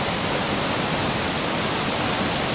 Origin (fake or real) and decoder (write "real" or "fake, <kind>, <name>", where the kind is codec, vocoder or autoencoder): real